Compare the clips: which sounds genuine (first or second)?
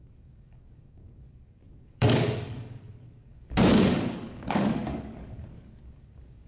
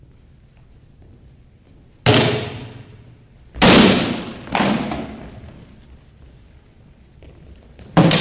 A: second